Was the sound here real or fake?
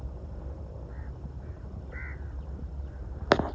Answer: real